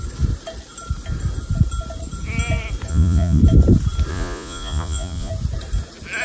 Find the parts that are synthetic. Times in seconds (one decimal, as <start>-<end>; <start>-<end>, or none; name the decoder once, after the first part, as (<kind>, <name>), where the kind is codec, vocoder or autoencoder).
2.9-3.4 (vocoder, Vocos); 4.1-5.3